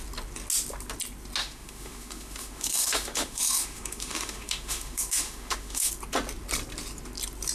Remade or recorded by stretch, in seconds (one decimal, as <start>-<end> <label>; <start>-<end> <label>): 0.0-1.4 recorded; 1.4-5.9 remade; 5.9-7.5 recorded

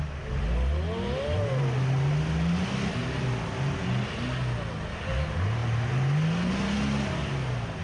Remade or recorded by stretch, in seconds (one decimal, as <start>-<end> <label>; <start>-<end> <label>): 0.0-7.8 recorded

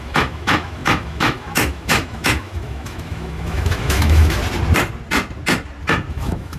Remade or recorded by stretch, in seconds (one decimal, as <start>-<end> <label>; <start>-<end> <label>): 0.0-4.4 remade; 4.4-6.1 recorded; 6.1-6.6 remade

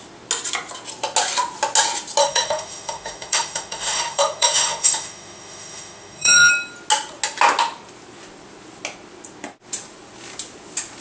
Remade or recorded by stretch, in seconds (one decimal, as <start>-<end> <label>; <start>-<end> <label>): 0.0-2.2 recorded; 2.2-6.5 remade; 6.5-11.0 recorded